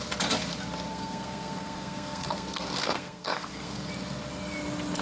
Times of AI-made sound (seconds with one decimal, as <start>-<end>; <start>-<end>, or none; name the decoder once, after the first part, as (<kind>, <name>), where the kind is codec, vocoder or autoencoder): 0.9-3.9 (codec, SNAC)